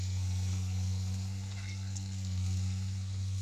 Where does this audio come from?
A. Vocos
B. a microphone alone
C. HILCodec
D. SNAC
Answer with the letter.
D